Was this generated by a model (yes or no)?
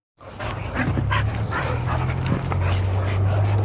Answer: no